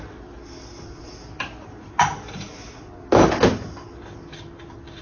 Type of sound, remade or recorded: recorded